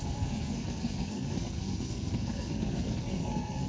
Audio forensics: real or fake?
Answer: fake